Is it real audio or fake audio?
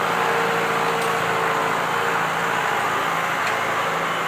real